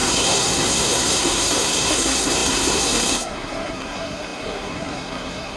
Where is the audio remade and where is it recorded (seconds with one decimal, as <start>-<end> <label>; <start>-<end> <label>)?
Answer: 0.0-5.6 remade